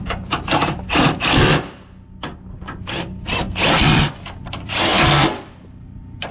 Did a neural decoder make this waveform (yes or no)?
yes